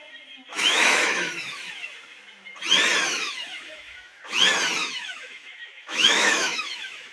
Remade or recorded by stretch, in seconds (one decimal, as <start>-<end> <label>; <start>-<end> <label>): 0.0-0.5 recorded; 0.5-1.7 remade; 1.7-3.1 recorded; 3.1-4.2 remade; 4.2-4.8 recorded; 4.8-7.1 remade